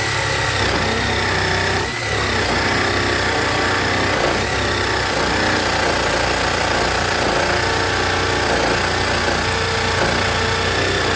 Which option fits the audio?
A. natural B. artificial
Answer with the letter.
A